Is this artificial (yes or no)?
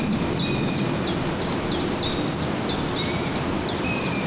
no